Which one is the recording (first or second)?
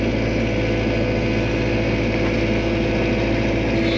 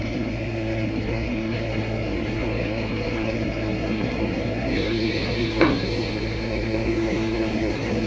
first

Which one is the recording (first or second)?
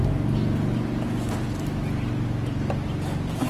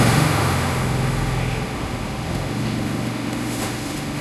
first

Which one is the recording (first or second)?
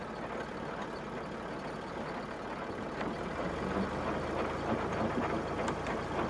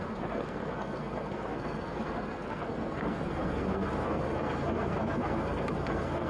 first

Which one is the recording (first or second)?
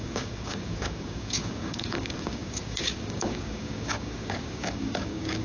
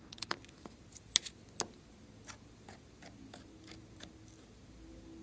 second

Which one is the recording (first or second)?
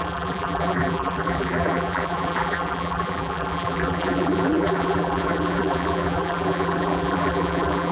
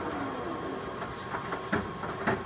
second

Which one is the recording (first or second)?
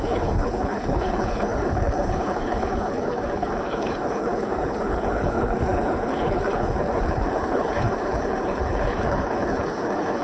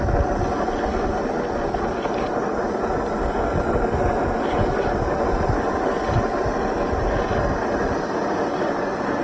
second